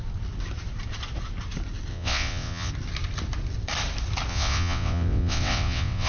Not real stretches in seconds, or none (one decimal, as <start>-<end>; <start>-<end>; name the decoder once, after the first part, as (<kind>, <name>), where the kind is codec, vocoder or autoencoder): 1.9-2.7 (vocoder, WaveNeXt); 4.3-6.1